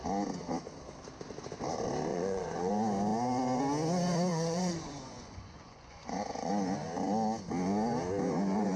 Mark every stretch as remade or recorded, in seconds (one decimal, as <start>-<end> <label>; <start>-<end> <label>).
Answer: 0.0-2.1 recorded; 2.1-2.7 remade; 2.7-4.3 recorded; 4.3-6.5 remade; 6.5-8.8 recorded